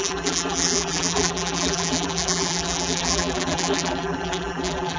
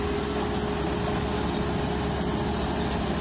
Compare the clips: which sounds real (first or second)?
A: second